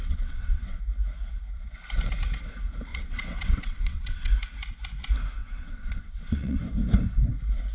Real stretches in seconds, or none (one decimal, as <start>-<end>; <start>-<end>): 0.8-2.9; 4.3-5.4; 6.6-7.7